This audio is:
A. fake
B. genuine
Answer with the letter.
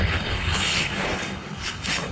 A